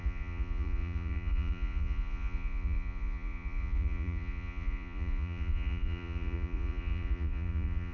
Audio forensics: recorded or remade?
remade